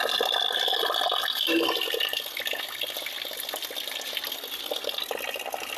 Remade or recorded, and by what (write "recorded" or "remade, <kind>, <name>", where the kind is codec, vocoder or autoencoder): recorded